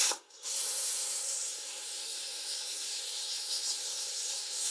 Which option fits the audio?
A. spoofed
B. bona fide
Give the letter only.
A